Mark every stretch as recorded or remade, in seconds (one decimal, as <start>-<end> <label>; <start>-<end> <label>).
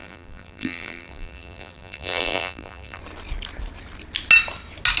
0.0-3.0 remade; 3.0-5.0 recorded